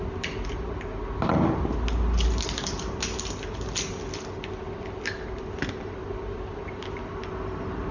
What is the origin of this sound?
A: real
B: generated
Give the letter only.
A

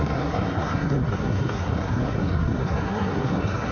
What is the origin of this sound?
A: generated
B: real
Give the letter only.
A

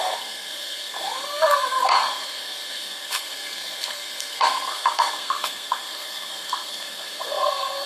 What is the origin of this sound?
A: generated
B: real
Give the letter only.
A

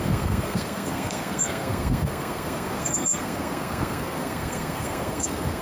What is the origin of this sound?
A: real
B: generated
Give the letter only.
B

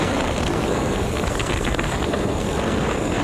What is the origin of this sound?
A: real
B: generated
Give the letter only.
B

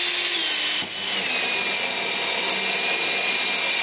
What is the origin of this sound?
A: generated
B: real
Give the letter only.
B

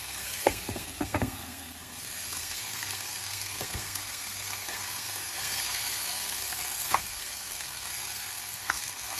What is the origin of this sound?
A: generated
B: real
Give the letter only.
A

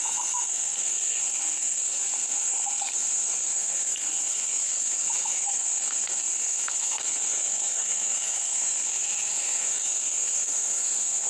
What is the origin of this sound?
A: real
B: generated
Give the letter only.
B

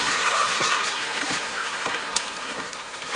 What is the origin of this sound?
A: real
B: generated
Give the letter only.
B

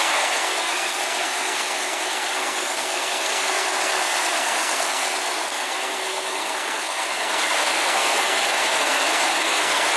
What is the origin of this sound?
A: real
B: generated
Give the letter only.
B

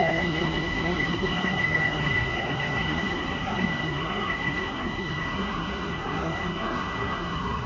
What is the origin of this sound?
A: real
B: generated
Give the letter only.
B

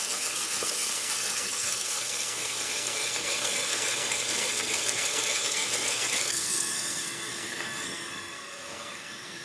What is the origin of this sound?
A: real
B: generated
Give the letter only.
B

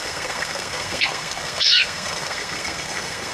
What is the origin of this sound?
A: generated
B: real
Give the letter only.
A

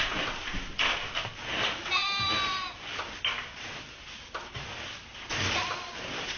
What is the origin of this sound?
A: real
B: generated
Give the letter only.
A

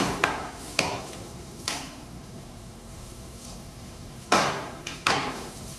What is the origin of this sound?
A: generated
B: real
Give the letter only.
A